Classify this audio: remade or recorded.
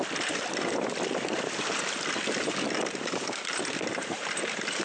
recorded